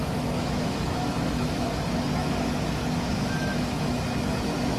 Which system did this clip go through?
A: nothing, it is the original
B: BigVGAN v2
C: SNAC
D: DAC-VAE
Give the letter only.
D